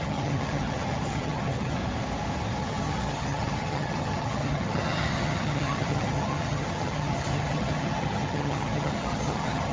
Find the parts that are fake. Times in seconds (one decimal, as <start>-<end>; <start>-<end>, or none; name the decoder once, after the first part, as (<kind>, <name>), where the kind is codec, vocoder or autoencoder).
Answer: 0.0-1.8 (vocoder, HiFi-GAN); 2.6-9.7